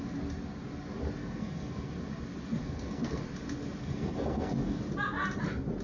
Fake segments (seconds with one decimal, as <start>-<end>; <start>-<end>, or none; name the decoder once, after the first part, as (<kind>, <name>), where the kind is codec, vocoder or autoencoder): 1.2-1.9 (codec, SNAC); 2.6-3.2; 3.8-4.8